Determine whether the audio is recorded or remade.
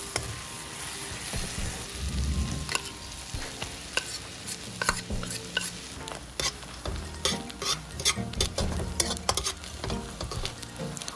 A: recorded